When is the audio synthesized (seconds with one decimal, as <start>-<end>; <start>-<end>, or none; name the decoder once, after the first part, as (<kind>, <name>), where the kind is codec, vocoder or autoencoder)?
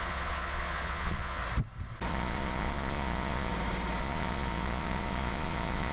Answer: 0.0-1.4 (vocoder, Vocos); 2.1-3.5; 4.0-5.9